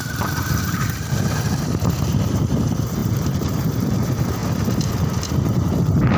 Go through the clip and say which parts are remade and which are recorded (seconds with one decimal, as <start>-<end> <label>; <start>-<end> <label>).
0.0-6.2 remade